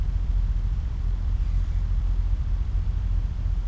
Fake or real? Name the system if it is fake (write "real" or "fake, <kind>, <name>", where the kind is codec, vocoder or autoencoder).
fake, vocoder, BigVGAN v2